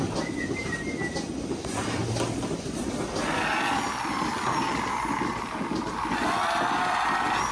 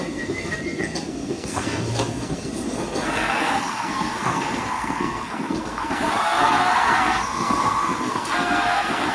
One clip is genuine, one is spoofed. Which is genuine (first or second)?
first